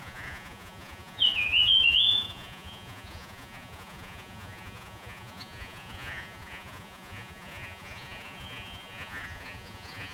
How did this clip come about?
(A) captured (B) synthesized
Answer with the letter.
B